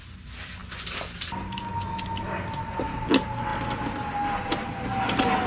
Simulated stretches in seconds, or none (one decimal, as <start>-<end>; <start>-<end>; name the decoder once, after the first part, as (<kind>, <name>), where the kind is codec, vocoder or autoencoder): none